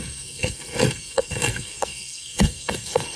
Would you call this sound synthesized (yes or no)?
yes